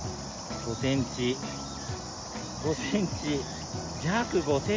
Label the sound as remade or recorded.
recorded